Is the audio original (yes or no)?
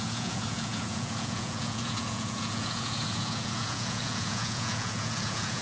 no